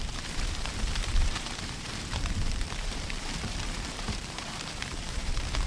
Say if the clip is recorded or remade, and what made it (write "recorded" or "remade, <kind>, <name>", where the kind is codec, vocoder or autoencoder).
remade, vocoder, BigVGAN v2